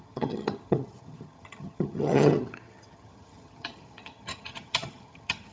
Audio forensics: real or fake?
fake